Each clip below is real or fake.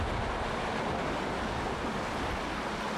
real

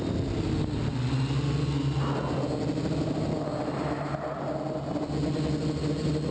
real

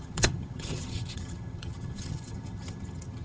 fake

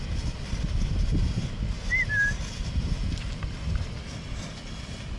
real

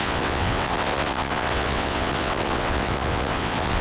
fake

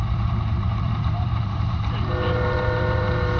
fake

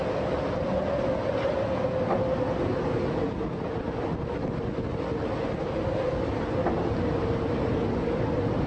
real